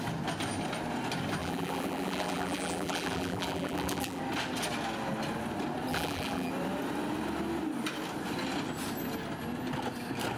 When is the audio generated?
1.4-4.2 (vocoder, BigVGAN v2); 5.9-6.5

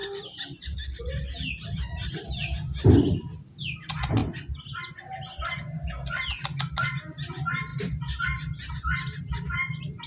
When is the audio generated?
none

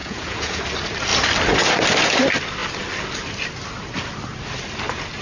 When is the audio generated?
0.0-0.6 (vocoder, Vocos)